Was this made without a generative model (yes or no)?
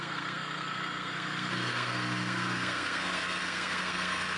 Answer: no